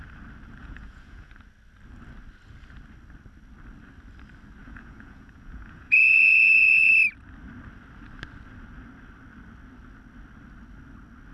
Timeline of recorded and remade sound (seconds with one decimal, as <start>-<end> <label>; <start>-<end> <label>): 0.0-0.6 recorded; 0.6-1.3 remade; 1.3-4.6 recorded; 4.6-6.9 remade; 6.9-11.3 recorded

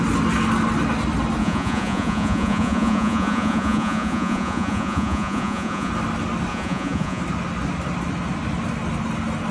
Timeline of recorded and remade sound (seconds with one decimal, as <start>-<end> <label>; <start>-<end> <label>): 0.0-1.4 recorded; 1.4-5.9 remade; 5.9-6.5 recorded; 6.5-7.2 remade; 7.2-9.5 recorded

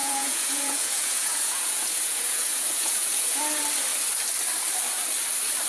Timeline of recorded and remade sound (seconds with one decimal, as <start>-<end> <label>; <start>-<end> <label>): 0.0-3.4 remade; 3.4-5.7 recorded